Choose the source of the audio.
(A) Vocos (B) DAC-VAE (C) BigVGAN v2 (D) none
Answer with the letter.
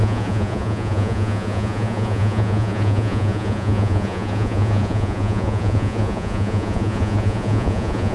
A